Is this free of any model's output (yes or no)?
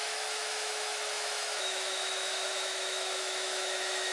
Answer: no